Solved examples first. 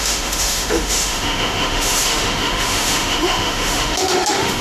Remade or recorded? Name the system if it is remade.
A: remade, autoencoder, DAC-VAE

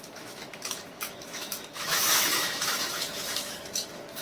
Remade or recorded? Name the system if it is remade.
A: remade, autoencoder, DAC-VAE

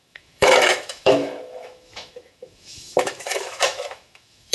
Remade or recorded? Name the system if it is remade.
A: remade, autoencoder, DAC-VAE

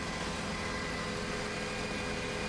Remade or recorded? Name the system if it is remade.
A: recorded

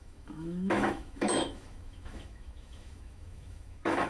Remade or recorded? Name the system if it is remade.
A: remade, autoencoder, DAC-VAE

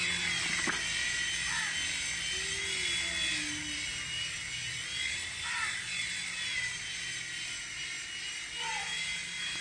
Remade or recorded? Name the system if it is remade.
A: recorded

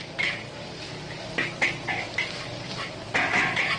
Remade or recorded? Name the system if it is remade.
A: recorded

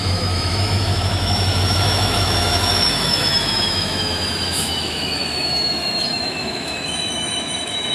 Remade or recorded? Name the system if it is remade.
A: remade, autoencoder, DAC-VAE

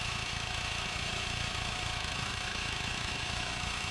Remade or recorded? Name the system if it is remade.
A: remade, autoencoder, DAC-VAE